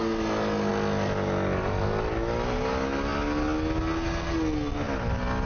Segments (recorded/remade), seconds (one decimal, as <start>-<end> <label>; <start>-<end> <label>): 0.0-5.5 recorded